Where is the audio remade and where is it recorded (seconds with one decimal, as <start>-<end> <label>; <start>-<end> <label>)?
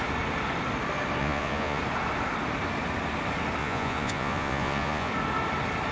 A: 0.0-1.2 recorded; 1.2-1.8 remade; 1.8-3.6 recorded; 3.6-5.1 remade; 5.1-5.9 recorded